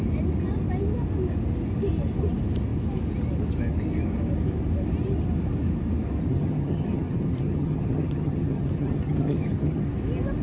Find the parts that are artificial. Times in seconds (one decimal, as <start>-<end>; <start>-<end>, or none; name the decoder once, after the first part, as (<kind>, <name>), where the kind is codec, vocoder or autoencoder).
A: 6.3-9.9 (vocoder, HiFi-GAN)

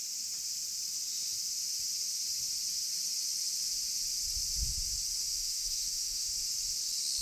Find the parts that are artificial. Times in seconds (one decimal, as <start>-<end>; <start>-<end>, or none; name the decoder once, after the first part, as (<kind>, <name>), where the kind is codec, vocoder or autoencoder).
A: 5.3-6.3 (autoencoder, DAC-VAE)